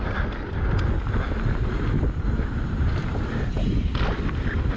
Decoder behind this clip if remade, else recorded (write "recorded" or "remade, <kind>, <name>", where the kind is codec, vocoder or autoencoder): recorded